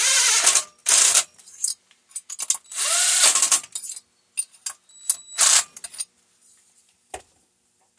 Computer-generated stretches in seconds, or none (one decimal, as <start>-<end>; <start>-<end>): 0.8-2.0; 2.9-3.7